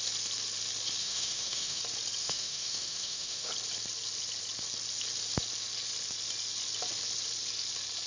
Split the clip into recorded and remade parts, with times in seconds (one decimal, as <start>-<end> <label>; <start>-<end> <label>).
0.0-1.0 recorded; 1.0-1.8 remade; 1.8-2.2 recorded; 2.2-3.5 remade; 3.5-8.1 recorded